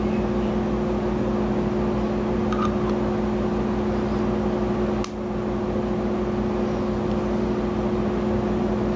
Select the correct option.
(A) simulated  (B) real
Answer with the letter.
B